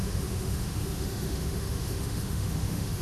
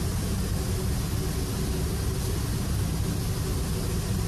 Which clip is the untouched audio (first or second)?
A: second